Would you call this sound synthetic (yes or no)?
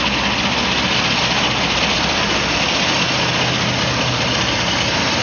no